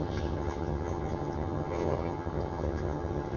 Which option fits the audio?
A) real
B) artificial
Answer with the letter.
B